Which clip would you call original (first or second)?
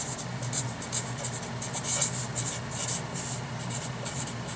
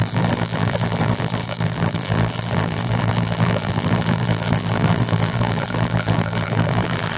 first